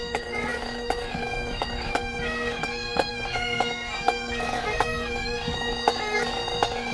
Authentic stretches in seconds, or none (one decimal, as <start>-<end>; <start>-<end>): none